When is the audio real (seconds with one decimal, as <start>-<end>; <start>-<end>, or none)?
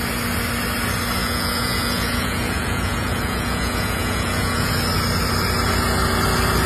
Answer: 0.0-1.2; 4.7-6.7